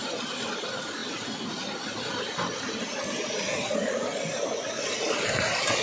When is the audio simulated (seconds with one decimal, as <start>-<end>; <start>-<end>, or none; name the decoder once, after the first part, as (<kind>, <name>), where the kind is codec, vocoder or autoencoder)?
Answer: none